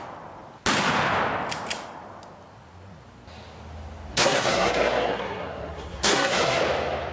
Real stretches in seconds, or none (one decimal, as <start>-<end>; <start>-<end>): 0.0-4.1; 6.6-7.1